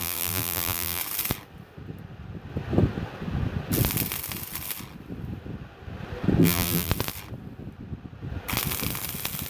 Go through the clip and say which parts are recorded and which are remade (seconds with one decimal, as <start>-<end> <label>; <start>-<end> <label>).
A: 0.0-1.0 remade; 1.0-6.4 recorded; 6.4-6.9 remade; 6.9-9.5 recorded